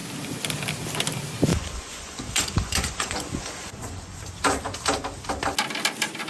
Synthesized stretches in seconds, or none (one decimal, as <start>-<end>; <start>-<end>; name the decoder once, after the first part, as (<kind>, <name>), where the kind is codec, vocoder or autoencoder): 1.5-4.2 (vocoder, Vocos)